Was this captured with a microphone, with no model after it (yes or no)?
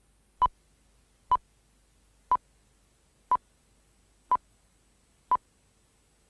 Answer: yes